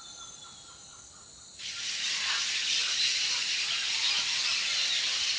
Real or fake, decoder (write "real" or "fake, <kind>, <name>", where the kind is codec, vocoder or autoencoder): real